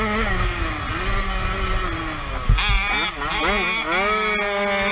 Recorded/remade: recorded